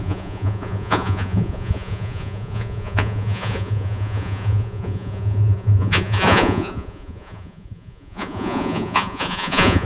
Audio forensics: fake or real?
fake